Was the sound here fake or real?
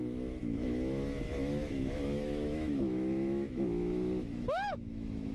fake